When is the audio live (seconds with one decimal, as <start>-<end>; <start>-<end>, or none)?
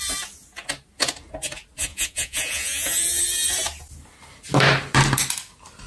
0.0-1.9; 3.2-5.9